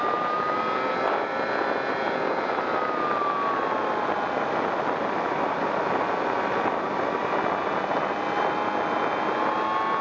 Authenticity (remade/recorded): recorded